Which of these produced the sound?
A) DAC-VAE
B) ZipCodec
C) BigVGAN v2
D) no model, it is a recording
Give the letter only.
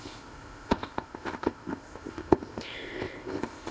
B